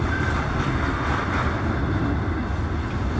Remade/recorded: recorded